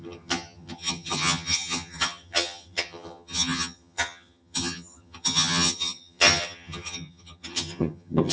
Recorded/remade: remade